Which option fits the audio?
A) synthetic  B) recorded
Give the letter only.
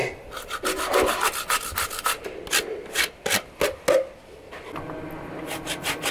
B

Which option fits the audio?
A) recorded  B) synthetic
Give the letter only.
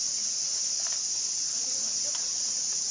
A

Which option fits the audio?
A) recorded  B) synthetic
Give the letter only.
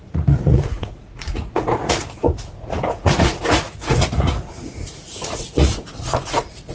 B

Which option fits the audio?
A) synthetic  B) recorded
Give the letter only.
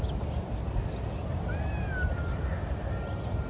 B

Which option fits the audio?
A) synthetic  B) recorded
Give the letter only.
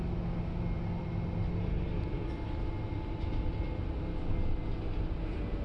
B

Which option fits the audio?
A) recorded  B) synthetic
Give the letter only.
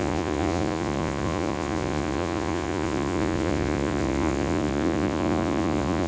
B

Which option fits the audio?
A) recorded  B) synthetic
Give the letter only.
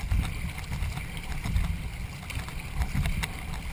A